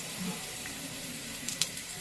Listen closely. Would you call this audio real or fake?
fake